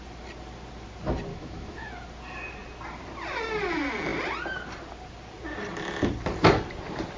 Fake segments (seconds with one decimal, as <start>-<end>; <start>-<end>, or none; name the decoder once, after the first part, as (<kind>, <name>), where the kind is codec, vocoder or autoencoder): 1.3-1.9 (autoencoder, DAC-VAE)